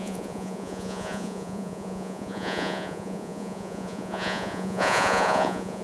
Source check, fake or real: fake